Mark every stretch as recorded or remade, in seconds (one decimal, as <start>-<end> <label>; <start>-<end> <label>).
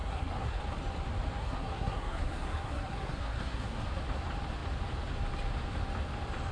0.0-0.6 remade; 0.6-1.4 recorded; 1.4-3.9 remade; 3.9-6.5 recorded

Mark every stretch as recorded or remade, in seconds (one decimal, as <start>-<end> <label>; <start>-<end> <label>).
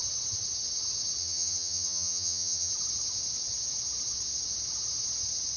0.0-1.2 recorded; 1.2-2.7 remade; 2.7-5.6 recorded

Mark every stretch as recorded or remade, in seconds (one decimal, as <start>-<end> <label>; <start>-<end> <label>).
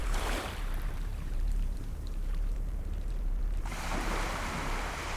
0.0-5.2 remade